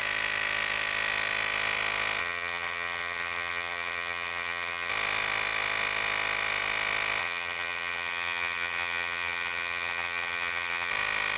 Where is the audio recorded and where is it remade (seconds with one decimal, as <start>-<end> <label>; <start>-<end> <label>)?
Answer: 0.0-2.2 recorded; 2.2-4.9 remade; 4.9-7.2 recorded; 7.2-10.9 remade; 10.9-11.4 recorded